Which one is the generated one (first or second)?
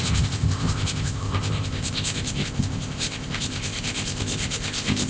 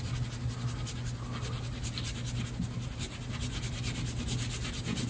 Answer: first